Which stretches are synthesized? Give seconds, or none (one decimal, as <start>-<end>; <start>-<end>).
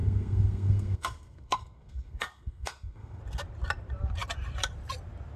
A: 0.0-3.2